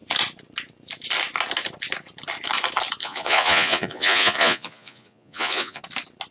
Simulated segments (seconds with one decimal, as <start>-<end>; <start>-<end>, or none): 3.0-5.8